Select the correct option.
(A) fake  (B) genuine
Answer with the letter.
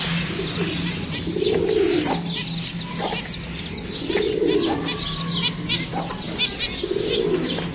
B